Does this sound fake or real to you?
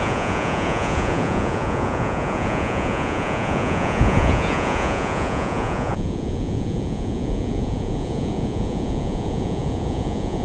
fake